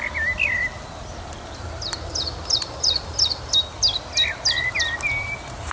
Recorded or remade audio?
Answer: recorded